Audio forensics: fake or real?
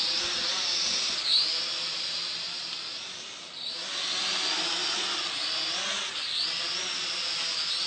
real